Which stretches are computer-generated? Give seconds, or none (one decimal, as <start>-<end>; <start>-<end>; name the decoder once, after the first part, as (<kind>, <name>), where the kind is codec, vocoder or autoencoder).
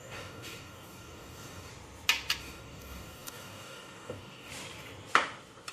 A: 0.0-1.7 (codec, DAC); 2.4-4.5